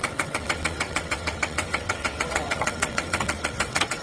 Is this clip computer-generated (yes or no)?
yes